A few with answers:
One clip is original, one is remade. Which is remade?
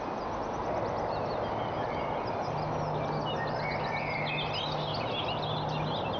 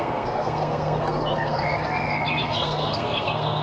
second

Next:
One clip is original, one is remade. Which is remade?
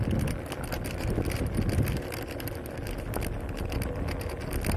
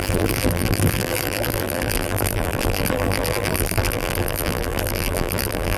second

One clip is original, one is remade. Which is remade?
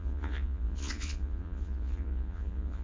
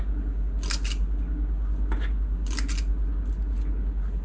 first